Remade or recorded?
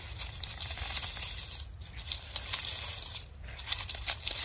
recorded